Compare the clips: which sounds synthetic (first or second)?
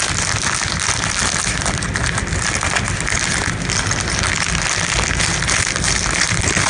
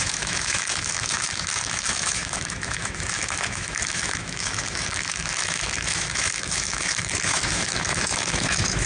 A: second